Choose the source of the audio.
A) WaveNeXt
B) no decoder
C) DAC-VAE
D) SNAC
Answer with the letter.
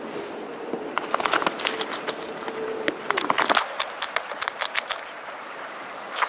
B